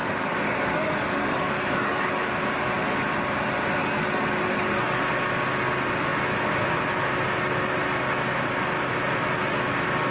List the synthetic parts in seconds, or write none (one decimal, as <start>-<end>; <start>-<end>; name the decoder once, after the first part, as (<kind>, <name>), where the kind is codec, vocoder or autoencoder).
0.0-2.3 (codec, DAC); 3.8-5.0